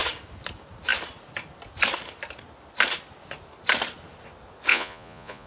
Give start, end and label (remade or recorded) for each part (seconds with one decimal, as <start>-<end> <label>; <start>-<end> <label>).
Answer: 0.0-4.7 recorded; 4.7-5.5 remade